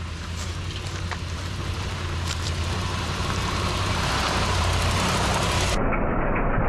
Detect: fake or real fake